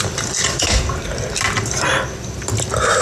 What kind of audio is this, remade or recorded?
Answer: recorded